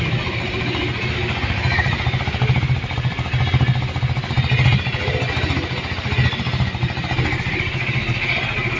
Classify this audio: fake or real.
real